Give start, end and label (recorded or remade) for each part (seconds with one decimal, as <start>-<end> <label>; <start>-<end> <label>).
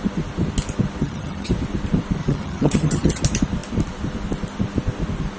0.0-1.0 recorded; 1.0-1.5 remade; 1.5-2.2 recorded; 2.2-3.2 remade; 3.2-5.4 recorded